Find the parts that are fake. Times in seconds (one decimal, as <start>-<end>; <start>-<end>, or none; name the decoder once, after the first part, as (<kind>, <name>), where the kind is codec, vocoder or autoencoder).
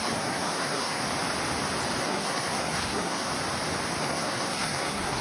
0.0-1.0 (codec, SNAC); 2.0-3.3; 4.0-5.2